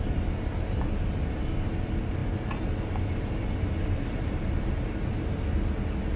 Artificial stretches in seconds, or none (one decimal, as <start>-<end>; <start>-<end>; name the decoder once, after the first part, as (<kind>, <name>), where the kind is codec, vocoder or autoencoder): none